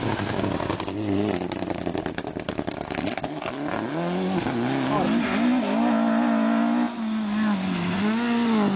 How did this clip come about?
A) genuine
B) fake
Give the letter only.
A